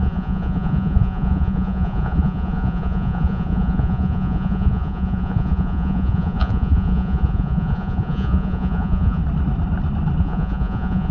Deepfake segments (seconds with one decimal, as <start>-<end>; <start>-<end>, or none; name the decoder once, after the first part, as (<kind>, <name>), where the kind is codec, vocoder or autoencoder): 0.0-9.2 (vocoder, Vocos); 10.2-11.1